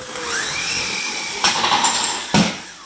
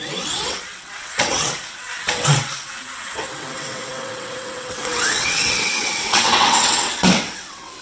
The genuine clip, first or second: first